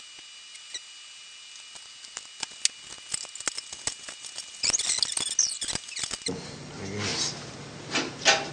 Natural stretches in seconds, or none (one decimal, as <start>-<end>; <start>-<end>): 0.0-8.5